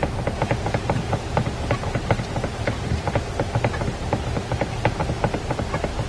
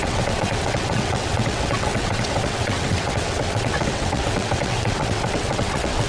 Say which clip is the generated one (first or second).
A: second